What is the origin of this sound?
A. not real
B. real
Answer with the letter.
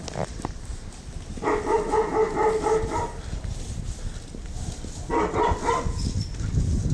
B